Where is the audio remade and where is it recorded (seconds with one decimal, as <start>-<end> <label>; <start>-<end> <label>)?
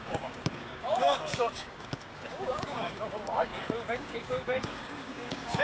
0.0-5.6 remade